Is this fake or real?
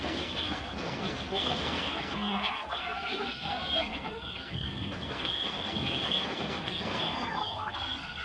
fake